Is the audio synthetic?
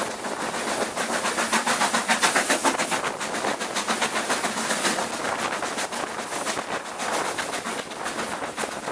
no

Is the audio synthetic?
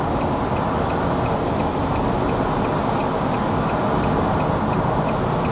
no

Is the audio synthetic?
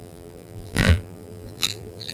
yes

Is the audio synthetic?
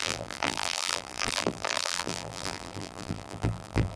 yes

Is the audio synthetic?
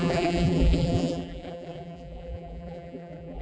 yes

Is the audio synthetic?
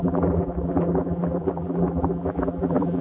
yes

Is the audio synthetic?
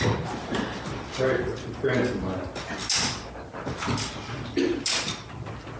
no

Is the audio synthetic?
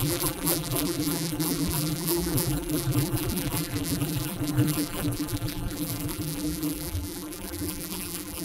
yes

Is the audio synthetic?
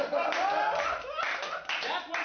no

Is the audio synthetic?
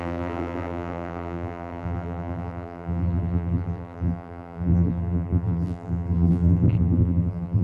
yes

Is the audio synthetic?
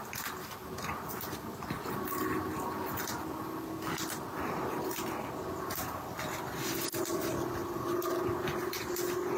no